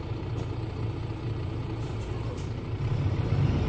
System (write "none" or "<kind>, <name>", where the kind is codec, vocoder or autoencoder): none